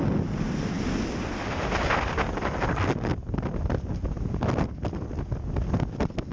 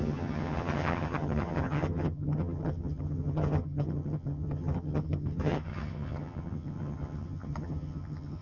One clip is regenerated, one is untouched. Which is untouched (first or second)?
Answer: first